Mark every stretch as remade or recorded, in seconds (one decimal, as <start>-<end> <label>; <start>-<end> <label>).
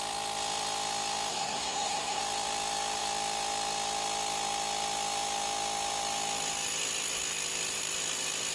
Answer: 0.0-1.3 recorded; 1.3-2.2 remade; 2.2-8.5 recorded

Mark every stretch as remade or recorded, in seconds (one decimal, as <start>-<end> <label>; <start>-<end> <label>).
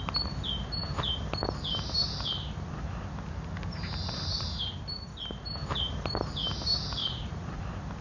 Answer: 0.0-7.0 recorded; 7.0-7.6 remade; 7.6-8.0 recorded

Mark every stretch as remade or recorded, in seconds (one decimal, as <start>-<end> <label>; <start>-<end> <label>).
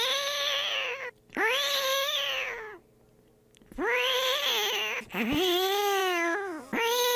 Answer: 0.0-6.0 recorded; 6.0-6.6 remade; 6.6-7.2 recorded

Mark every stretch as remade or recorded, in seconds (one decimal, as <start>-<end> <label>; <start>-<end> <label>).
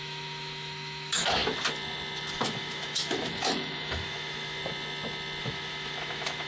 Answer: 0.0-1.4 remade; 1.4-2.3 recorded; 2.3-4.6 remade; 4.6-5.4 recorded; 5.4-6.5 remade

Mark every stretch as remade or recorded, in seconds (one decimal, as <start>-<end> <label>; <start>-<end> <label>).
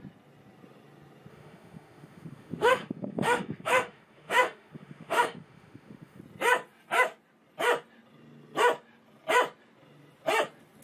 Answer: 0.0-1.3 recorded; 1.3-6.2 remade; 6.2-10.8 recorded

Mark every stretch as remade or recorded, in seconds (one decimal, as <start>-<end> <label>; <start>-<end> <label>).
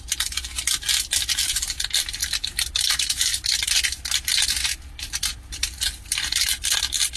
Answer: 0.0-2.2 recorded; 2.2-2.9 remade; 2.9-4.7 recorded; 4.7-6.5 remade; 6.5-7.2 recorded